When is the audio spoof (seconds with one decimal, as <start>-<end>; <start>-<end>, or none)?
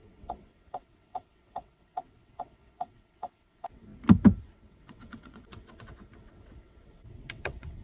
0.0-3.9; 4.4-7.8